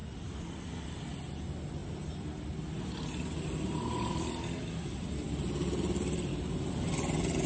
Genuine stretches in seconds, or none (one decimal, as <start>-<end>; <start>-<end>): 0.0-7.5